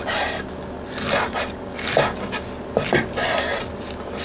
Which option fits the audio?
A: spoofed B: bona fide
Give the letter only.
B